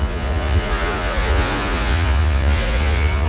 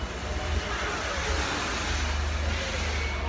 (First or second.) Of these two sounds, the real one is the second